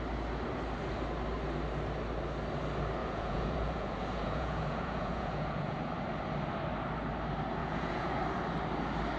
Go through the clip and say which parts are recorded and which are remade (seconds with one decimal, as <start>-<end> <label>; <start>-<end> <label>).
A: 0.0-3.0 recorded; 3.0-5.9 remade; 5.9-7.6 recorded; 7.6-8.2 remade; 8.2-9.2 recorded